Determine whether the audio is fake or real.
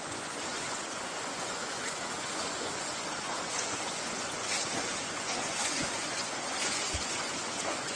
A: fake